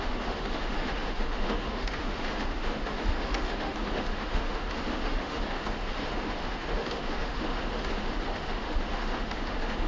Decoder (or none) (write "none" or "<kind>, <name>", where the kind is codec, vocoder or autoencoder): autoencoder, DAC-VAE